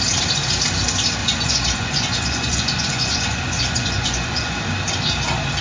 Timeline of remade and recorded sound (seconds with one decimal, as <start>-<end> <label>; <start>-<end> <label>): 0.0-1.2 recorded; 1.2-4.6 remade; 4.6-5.6 recorded